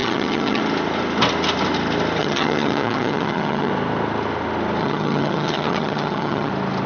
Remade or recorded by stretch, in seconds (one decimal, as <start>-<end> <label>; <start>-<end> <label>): 0.0-0.6 remade; 0.6-2.2 recorded; 2.2-3.7 remade; 3.7-4.8 recorded; 4.8-6.5 remade; 6.5-6.9 recorded